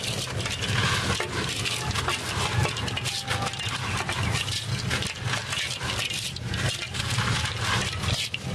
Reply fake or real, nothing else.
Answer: real